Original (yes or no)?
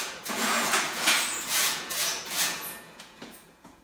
no